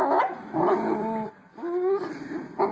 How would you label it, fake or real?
real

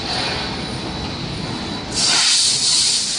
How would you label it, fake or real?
real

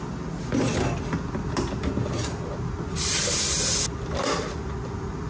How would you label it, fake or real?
real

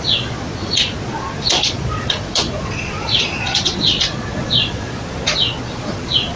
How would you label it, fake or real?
fake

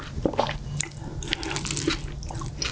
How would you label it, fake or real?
real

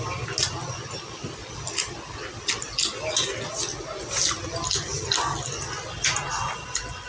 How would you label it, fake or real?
real